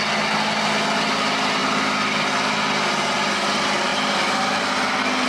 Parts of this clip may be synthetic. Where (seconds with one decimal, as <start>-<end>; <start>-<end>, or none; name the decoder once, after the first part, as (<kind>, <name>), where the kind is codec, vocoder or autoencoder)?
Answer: none